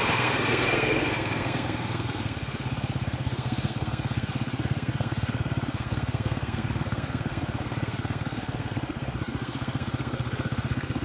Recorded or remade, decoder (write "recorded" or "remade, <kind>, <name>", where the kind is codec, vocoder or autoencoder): remade, codec, SNAC